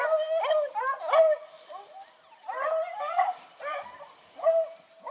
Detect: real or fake real